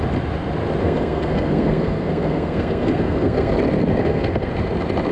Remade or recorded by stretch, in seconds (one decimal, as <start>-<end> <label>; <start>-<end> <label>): 0.0-0.8 recorded; 0.8-3.5 remade; 3.5-4.0 recorded; 4.0-4.5 remade; 4.5-5.1 recorded